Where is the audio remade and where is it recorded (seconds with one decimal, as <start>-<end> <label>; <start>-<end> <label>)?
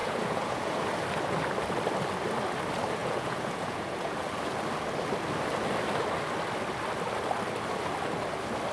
0.0-0.8 remade; 0.8-3.0 recorded; 3.0-4.2 remade; 4.2-8.7 recorded